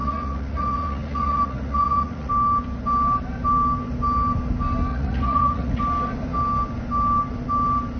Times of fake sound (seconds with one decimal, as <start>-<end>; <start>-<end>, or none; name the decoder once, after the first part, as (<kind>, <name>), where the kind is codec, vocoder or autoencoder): 0.0-2.3 (vocoder, Vocos); 4.9-5.8